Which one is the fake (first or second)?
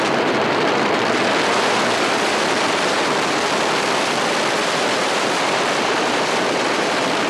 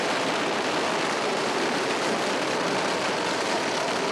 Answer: first